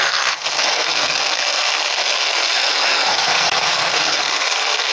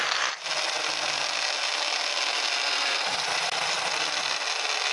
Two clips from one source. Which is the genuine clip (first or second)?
second